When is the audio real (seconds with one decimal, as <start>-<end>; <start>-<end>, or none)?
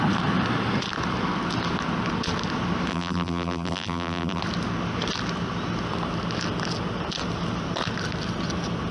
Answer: 0.0-2.9; 4.4-8.9